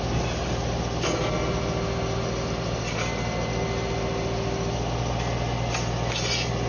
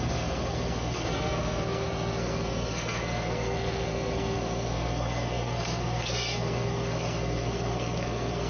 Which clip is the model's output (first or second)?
second